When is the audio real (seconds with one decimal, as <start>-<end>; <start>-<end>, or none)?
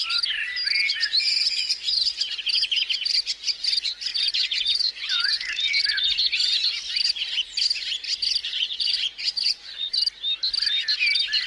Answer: 0.0-4.1; 5.7-8.4; 9.9-11.5